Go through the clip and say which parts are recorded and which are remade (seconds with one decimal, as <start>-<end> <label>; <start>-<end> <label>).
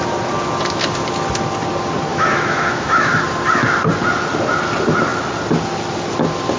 0.0-2.1 recorded; 2.1-3.1 remade; 3.1-6.6 recorded